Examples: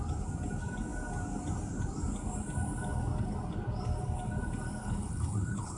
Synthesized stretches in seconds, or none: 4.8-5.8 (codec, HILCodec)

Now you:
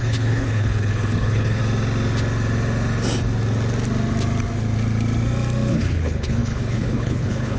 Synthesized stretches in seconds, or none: 0.0-1.6 (codec, HILCodec); 5.7-7.6

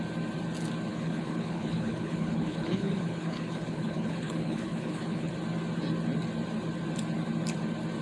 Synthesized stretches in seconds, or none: 0.9-5.3 (codec, HILCodec)